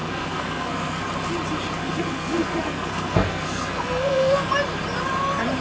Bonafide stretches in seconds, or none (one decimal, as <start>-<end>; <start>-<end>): 1.0-1.8; 4.5-5.6